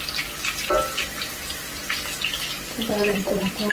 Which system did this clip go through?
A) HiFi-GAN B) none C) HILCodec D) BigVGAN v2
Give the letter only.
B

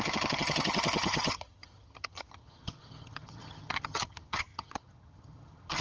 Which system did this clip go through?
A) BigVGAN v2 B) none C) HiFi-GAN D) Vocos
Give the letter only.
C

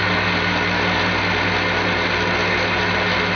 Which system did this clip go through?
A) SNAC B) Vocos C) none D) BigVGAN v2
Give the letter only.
C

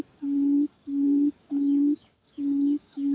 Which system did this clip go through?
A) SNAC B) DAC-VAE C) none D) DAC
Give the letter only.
D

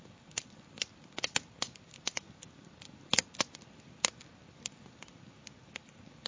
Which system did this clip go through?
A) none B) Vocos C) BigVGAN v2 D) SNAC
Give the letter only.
A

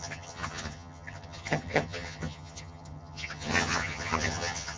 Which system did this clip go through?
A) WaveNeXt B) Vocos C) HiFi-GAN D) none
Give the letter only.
C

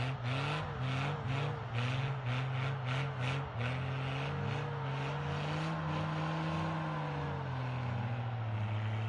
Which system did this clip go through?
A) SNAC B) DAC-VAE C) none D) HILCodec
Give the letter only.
C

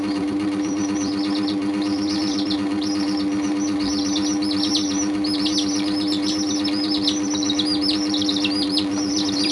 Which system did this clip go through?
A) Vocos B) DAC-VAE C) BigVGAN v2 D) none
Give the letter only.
C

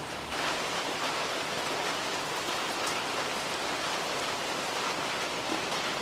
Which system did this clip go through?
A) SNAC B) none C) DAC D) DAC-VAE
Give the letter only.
B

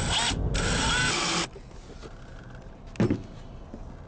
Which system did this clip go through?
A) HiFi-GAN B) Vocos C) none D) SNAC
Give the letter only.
C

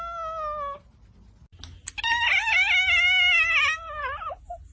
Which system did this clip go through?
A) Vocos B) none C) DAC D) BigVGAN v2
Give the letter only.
B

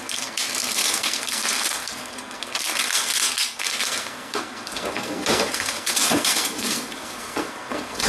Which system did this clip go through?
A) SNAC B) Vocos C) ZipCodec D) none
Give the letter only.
A